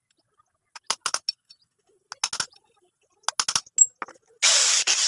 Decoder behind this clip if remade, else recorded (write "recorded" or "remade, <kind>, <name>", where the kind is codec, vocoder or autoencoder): recorded